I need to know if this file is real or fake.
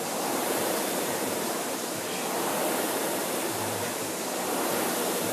fake